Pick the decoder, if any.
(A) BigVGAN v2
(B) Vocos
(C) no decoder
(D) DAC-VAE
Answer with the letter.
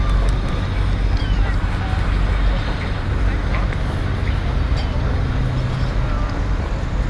C